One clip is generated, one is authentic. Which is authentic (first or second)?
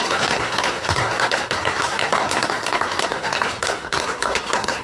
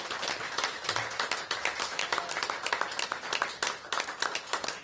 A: second